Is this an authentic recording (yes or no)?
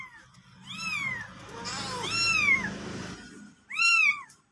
yes